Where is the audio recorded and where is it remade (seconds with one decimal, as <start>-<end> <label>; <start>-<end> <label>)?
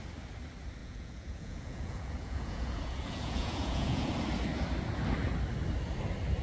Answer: 0.0-0.8 recorded; 0.8-4.1 remade; 4.1-6.4 recorded